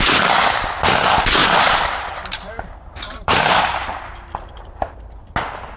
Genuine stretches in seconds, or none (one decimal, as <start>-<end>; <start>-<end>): 0.0-1.4; 4.9-5.8